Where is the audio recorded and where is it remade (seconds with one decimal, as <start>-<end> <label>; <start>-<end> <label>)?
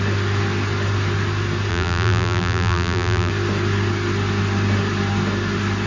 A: 0.0-1.7 recorded; 1.7-3.3 remade; 3.3-5.9 recorded